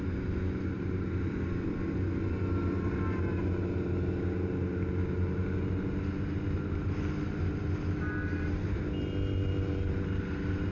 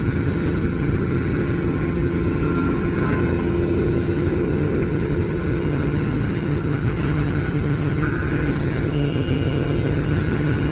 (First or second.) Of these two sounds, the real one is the first